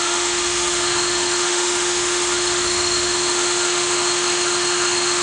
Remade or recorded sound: remade